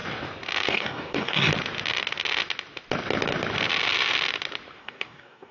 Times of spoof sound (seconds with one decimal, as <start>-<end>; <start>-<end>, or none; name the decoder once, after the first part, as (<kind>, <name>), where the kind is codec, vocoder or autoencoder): 0.7-1.5 (codec, DAC); 4.8-5.5